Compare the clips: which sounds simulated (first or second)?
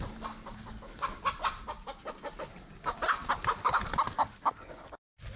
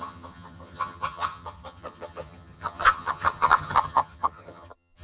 second